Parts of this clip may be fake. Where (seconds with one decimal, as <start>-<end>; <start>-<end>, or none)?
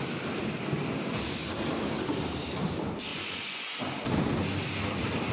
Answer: 3.1-3.8